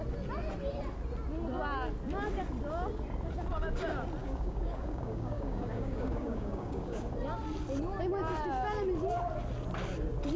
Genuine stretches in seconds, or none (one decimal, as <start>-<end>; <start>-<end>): 0.0-4.2; 7.1-10.4